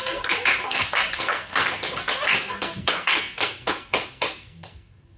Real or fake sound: fake